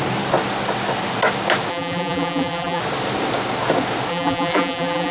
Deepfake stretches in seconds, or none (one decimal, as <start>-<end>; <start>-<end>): 1.7-2.8; 4.1-5.1